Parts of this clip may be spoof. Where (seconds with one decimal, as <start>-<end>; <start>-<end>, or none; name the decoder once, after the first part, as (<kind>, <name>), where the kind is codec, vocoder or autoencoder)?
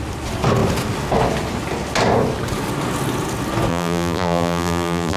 3.7-5.2 (vocoder, BigVGAN v2)